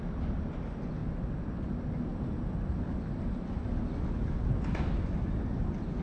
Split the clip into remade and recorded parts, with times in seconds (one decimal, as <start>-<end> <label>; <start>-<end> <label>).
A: 0.0-6.0 recorded